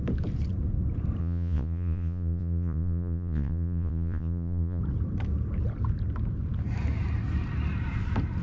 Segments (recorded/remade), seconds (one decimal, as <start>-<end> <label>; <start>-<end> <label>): 0.0-1.2 recorded; 1.2-4.8 remade; 4.8-8.4 recorded